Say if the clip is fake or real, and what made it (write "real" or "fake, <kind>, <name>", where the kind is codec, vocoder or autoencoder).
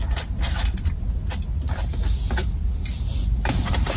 real